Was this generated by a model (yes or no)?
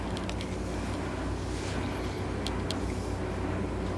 no